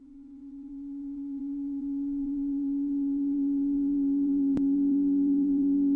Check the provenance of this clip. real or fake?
fake